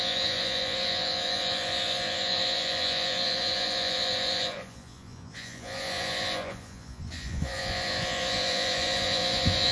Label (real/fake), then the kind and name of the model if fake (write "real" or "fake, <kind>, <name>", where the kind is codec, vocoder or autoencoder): fake, vocoder, Vocos